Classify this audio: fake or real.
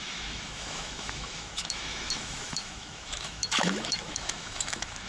fake